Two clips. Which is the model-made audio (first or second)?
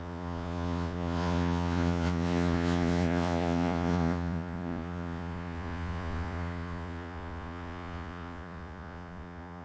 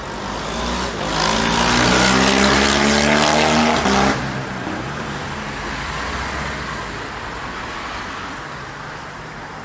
first